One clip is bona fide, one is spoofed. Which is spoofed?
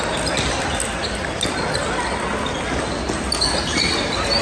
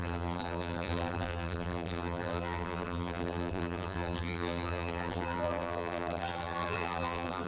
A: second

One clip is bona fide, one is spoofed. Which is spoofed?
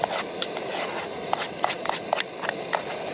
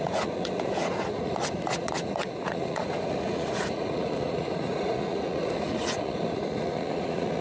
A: second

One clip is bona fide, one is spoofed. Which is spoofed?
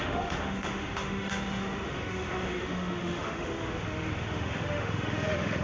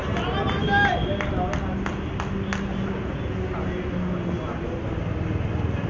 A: first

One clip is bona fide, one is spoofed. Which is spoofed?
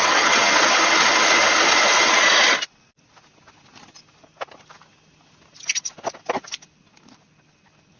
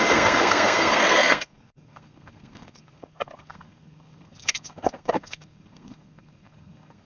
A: second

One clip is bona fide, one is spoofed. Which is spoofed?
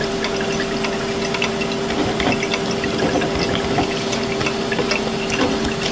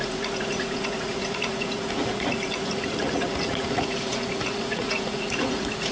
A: second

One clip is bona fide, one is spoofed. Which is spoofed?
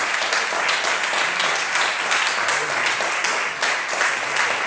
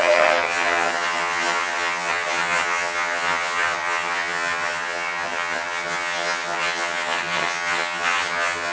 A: second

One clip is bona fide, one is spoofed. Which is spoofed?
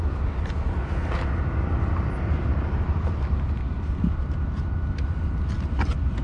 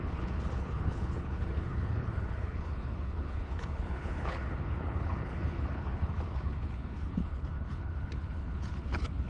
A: second